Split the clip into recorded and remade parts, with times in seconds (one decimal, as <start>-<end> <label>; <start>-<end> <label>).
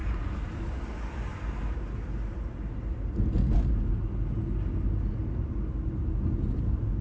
0.0-0.6 remade; 0.6-7.0 recorded